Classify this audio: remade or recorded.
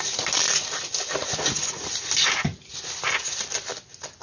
recorded